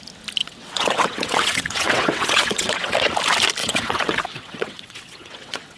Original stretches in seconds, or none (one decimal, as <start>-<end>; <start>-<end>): 0.0-0.4; 3.0-3.6